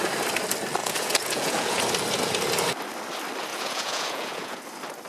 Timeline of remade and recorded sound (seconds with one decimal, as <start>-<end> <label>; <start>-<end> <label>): 0.0-0.8 recorded; 0.8-1.8 remade; 1.8-3.5 recorded; 3.5-4.6 remade; 4.6-5.1 recorded